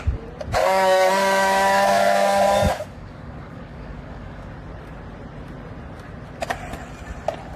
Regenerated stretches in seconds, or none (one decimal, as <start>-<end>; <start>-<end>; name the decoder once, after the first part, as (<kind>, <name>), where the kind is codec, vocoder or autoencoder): 0.6-4.5 (codec, DAC)